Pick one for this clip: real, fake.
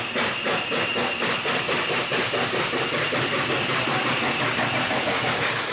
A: real